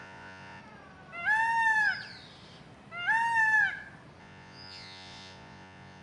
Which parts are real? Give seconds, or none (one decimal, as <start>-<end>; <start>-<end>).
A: 0.6-4.2